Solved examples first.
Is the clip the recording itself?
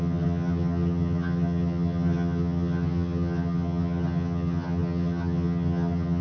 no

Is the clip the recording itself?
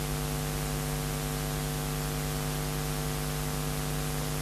yes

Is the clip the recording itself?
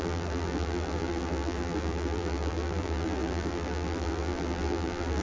no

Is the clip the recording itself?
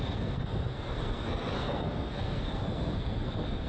no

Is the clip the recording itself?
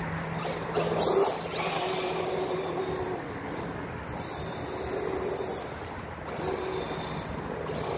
yes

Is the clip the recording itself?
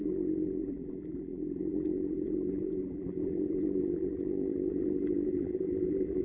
no